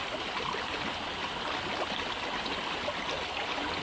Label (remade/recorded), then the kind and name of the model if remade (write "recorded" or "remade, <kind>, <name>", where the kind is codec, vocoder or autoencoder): recorded